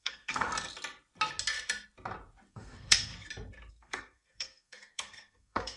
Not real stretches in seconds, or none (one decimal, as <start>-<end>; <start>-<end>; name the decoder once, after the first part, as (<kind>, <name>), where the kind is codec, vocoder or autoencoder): 0.0-0.5 (codec, SNAC); 2.5-3.1; 3.7-5.8